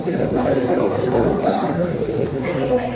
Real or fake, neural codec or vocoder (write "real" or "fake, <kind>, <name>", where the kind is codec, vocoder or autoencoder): fake, codec, SNAC